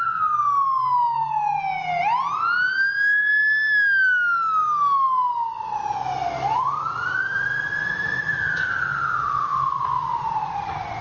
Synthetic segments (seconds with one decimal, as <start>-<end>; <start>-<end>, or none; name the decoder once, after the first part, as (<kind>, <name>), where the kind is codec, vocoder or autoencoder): none